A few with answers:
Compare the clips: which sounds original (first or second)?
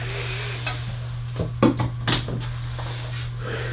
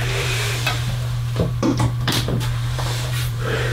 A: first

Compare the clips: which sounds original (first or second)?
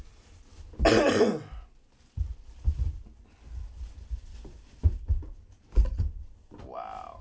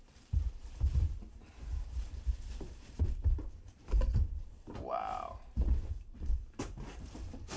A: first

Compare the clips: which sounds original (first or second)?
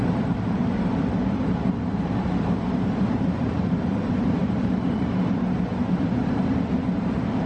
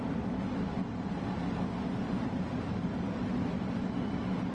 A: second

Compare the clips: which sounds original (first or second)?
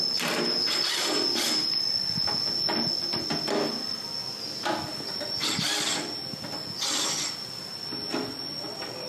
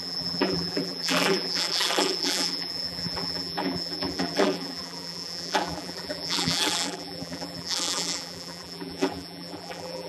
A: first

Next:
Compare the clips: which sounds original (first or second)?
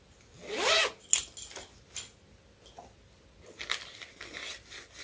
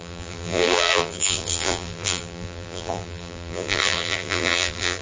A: first